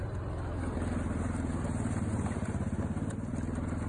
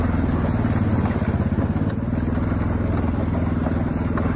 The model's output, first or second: first